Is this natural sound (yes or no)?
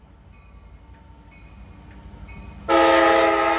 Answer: yes